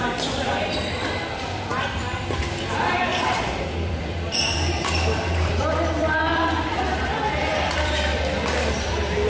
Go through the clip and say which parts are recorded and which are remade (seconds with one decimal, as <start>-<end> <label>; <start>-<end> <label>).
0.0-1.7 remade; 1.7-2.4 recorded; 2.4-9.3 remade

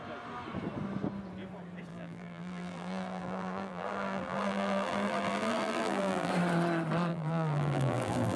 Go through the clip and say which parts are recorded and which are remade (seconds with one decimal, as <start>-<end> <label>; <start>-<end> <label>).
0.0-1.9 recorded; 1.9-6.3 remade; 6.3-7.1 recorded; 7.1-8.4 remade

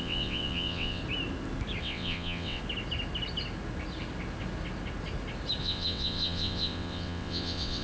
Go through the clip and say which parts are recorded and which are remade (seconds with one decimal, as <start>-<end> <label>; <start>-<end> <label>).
0.0-1.0 remade; 1.0-1.8 recorded; 1.8-2.6 remade; 2.6-5.6 recorded; 5.6-7.8 remade

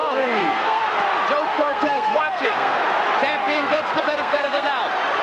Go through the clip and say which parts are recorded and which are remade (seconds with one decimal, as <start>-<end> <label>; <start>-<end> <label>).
0.0-0.8 remade; 0.8-1.5 recorded; 1.5-2.8 remade; 2.8-3.4 recorded; 3.4-4.7 remade; 4.7-5.2 recorded

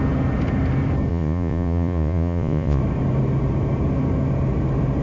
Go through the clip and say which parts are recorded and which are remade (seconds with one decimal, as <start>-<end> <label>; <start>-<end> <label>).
0.0-1.1 recorded; 1.1-2.8 remade; 2.8-5.0 recorded

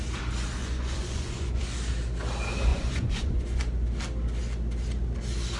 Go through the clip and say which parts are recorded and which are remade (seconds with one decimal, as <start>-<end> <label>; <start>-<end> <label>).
0.0-0.6 recorded; 0.6-1.6 remade; 1.6-2.7 recorded; 2.7-3.6 remade; 3.6-5.6 recorded

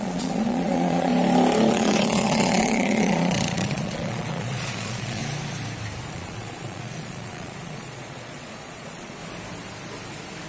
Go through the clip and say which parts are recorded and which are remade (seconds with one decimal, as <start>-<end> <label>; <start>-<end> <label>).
0.0-1.1 remade; 1.1-1.7 recorded; 1.7-5.2 remade; 5.2-6.1 recorded; 6.1-9.2 remade; 9.2-10.5 recorded